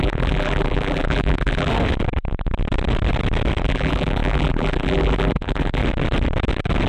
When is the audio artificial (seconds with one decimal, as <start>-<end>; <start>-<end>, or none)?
0.0-1.7; 3.6-5.8